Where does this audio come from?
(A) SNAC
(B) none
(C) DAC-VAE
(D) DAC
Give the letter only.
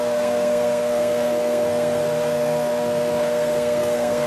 A